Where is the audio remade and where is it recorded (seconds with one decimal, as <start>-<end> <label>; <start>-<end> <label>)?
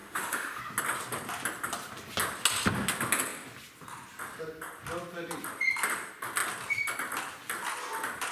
0.0-0.6 remade; 0.6-8.3 recorded